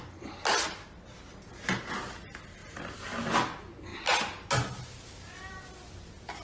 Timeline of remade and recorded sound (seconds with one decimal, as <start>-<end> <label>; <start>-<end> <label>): 0.0-2.6 recorded; 2.6-3.3 remade; 3.3-6.4 recorded